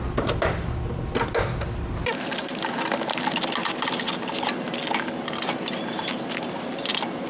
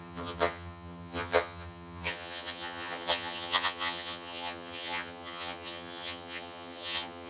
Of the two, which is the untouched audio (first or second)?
first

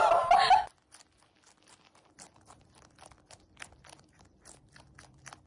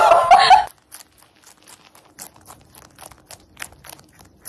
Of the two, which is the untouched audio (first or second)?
second